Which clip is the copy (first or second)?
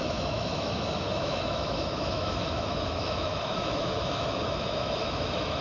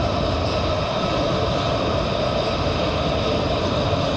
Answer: first